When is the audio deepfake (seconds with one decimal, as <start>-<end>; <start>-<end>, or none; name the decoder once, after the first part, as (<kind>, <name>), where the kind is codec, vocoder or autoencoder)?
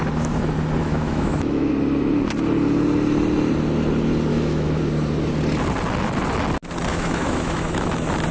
0.8-1.7 (autoencoder, DAC-VAE); 4.3-4.8; 6.9-7.9